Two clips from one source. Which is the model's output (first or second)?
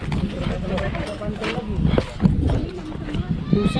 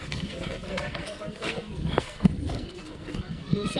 second